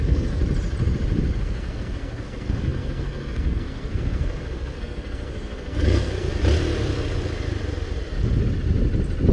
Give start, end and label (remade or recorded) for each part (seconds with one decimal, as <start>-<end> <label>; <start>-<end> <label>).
0.0-0.4 remade; 0.4-1.4 recorded; 1.4-6.3 remade; 6.3-9.3 recorded

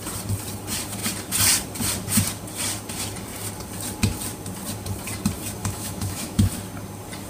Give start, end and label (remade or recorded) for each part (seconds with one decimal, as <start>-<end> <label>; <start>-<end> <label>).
0.0-5.6 recorded; 5.6-6.5 remade; 6.5-7.3 recorded

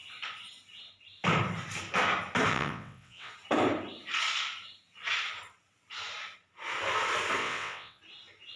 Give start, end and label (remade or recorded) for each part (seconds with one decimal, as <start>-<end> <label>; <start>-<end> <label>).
0.0-2.5 recorded; 2.5-3.3 remade; 3.3-7.4 recorded; 7.4-8.0 remade; 8.0-8.6 recorded